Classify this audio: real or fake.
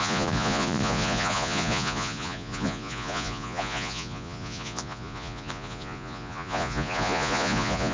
fake